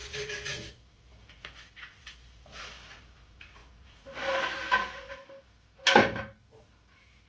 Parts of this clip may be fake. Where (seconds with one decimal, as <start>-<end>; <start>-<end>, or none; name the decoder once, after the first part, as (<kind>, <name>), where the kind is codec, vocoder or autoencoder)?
0.0-2.6 (vocoder, BigVGAN v2); 3.6-5.4